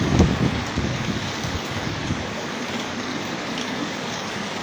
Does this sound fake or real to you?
fake